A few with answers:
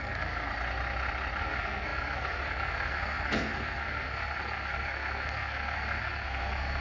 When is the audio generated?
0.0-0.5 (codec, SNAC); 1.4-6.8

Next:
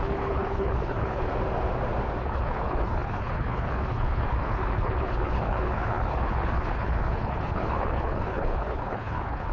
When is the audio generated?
0.0-1.3 (codec, HILCodec); 2.2-9.5

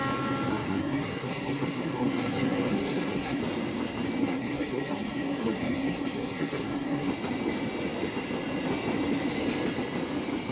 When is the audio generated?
0.5-3.4 (codec, SNAC); 4.2-7.1

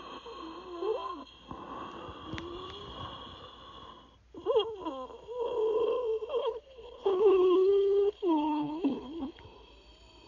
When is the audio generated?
6.4-9.4 (codec, HILCodec)